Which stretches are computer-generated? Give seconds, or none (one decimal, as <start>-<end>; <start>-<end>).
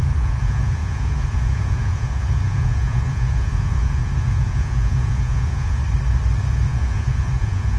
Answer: 0.0-5.8; 6.4-7.8